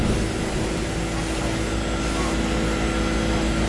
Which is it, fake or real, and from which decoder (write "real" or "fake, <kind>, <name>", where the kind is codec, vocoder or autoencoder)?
real